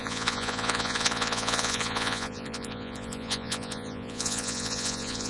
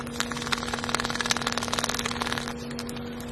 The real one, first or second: second